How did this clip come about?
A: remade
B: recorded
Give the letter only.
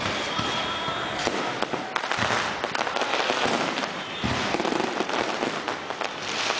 A